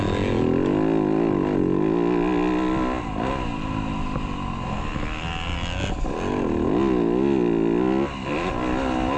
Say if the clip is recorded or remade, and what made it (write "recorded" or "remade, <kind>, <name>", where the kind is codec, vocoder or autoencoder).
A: recorded